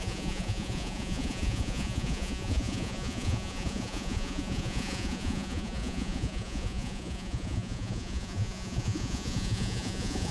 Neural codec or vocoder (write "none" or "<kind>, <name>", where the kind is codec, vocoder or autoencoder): vocoder, Vocos